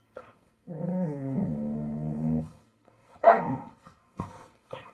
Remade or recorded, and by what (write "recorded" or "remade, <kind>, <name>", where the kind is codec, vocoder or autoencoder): remade, codec, SNAC